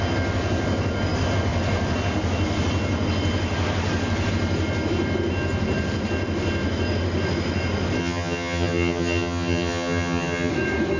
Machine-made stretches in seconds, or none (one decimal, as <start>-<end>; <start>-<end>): 8.0-10.5